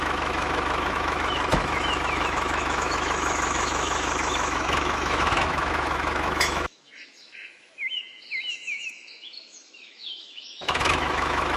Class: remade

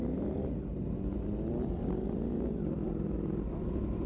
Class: recorded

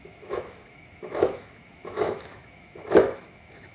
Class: remade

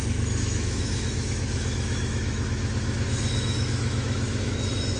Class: remade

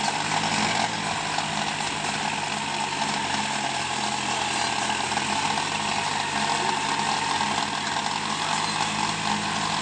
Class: recorded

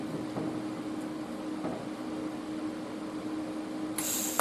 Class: recorded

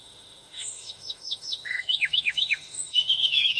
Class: remade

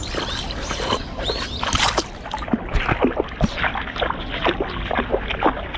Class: recorded